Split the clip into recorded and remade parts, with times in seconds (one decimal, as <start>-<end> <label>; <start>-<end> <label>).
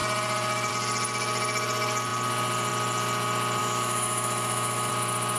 0.0-3.6 recorded; 3.6-4.9 remade; 4.9-5.4 recorded